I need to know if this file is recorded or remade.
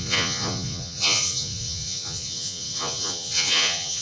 remade